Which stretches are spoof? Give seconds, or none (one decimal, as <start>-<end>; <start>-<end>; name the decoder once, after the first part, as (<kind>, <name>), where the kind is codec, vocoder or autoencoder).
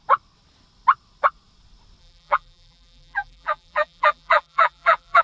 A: 2.0-5.2 (vocoder, BigVGAN v2)